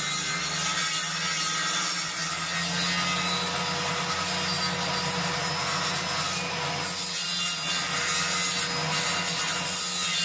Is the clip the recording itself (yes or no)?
yes